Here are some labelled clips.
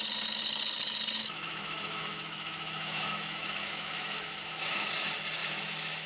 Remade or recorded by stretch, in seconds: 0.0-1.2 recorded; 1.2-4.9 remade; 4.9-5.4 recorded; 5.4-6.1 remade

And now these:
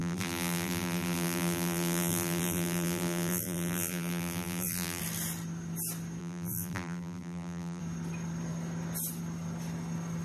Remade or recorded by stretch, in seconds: 0.0-5.0 remade; 5.0-6.2 recorded; 6.2-7.8 remade; 7.8-10.2 recorded

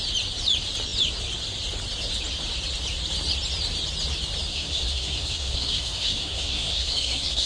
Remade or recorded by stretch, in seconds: 0.0-4.5 recorded; 4.5-7.5 remade

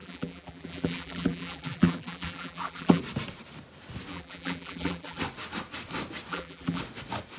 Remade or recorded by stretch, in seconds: 0.0-3.0 remade; 3.0-4.1 recorded; 4.1-5.2 remade; 5.2-6.3 recorded; 6.3-6.8 remade; 6.8-7.4 recorded